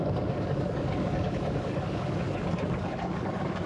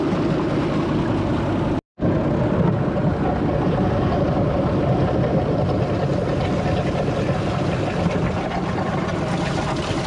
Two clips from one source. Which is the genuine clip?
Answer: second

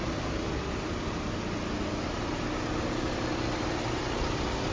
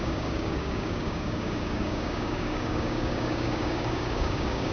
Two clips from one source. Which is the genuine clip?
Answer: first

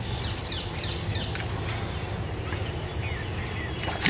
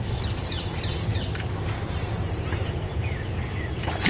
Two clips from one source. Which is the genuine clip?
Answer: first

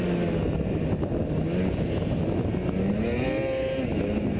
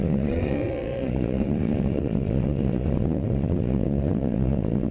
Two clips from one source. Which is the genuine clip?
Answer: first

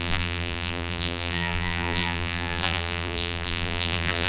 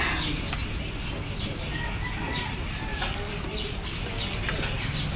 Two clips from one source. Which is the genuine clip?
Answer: second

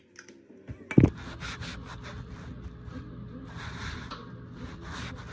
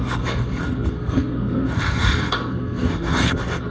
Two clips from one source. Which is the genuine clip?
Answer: first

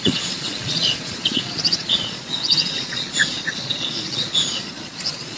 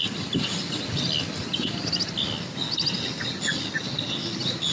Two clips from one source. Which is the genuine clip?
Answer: second